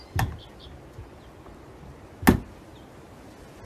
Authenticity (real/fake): real